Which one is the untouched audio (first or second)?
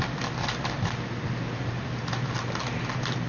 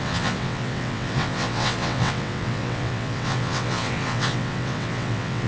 first